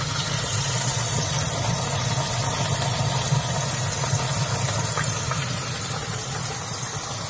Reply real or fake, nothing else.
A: real